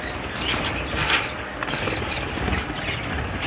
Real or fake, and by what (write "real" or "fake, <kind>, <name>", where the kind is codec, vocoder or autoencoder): fake, vocoder, BigVGAN v2